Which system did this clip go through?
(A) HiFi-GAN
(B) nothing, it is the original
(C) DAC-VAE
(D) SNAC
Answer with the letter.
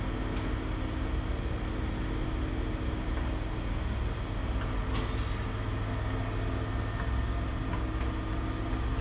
B